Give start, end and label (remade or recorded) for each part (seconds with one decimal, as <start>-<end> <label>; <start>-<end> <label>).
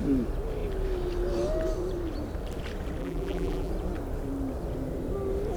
0.0-3.0 recorded; 3.0-3.7 remade; 3.7-5.6 recorded